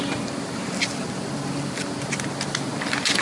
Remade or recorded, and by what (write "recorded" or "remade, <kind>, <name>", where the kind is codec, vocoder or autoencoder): recorded